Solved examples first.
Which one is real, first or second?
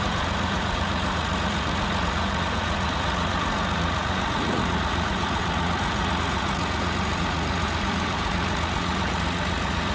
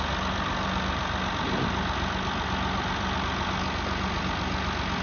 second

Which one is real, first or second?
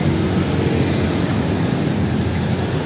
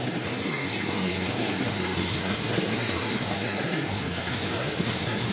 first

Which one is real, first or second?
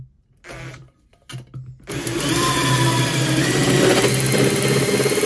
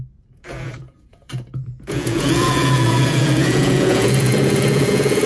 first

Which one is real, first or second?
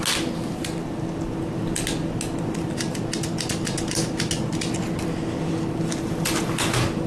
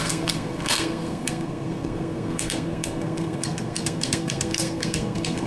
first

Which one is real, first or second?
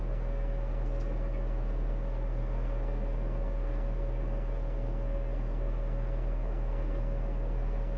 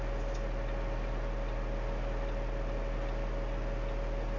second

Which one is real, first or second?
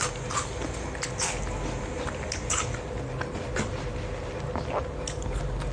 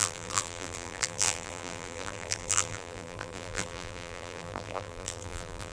first